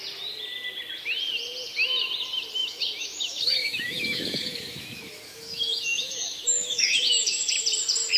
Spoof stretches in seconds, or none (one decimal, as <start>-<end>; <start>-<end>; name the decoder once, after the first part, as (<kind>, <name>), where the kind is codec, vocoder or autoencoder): 2.6-7.5 (autoencoder, DAC-VAE)